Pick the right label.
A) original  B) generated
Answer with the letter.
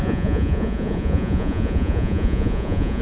B